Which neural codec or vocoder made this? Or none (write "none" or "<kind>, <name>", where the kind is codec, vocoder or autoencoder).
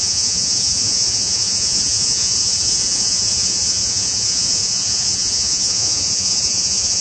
vocoder, Vocos